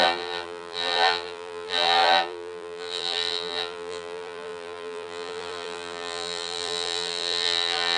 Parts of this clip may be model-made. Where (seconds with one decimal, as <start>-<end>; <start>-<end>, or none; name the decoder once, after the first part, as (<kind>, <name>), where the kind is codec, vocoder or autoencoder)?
0.0-8.0 (vocoder, BigVGAN v2)